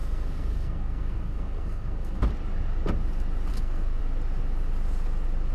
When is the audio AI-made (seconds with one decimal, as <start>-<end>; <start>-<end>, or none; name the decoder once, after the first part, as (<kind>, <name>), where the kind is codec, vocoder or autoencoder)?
0.0-2.2 (codec, SNAC); 3.5-4.0